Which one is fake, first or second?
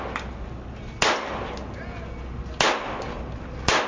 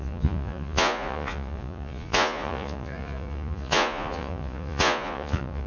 second